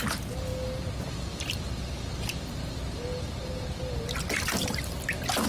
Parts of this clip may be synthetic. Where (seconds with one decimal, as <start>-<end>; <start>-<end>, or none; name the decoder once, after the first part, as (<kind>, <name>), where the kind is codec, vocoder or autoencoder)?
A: none